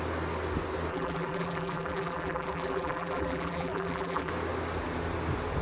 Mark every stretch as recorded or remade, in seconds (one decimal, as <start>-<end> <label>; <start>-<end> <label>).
0.0-0.9 recorded; 0.9-4.3 remade; 4.3-5.6 recorded